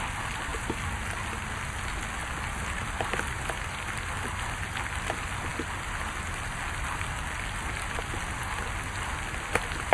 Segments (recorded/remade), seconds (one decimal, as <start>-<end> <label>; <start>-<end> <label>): 0.0-9.9 recorded